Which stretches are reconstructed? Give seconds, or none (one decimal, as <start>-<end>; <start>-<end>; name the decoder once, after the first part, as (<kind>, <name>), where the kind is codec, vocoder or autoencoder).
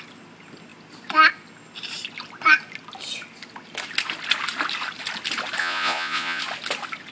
5.6-6.4 (vocoder, Vocos)